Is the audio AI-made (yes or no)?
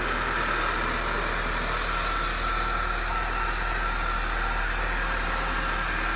no